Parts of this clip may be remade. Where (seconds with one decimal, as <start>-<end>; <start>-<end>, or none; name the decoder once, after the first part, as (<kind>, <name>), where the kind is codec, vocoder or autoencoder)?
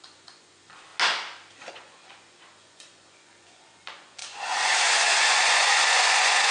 0.0-0.9 (vocoder, Vocos); 1.7-6.5